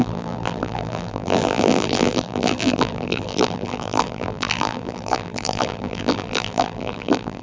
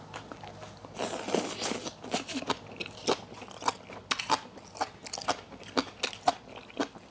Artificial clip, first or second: first